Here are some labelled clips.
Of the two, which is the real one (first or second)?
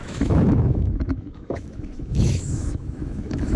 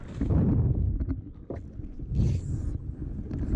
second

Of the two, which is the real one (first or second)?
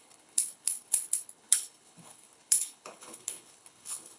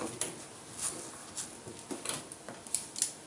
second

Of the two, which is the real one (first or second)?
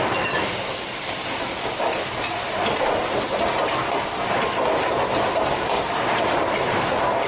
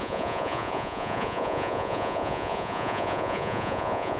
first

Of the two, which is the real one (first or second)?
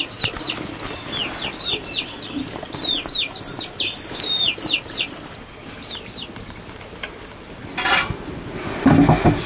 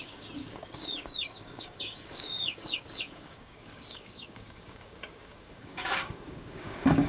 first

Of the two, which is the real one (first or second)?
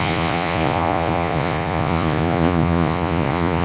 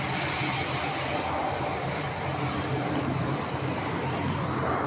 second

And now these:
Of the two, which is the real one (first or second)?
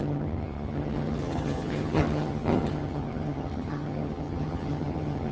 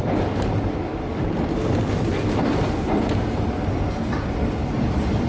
second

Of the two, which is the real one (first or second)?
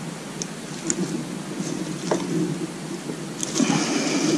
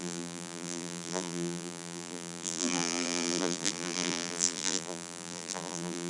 first